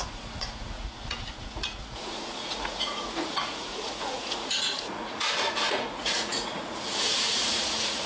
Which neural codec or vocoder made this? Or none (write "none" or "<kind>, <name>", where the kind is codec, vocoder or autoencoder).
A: vocoder, Vocos